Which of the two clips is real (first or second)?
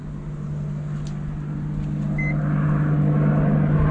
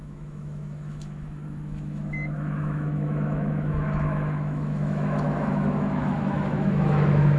first